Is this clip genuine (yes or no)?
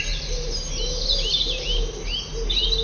yes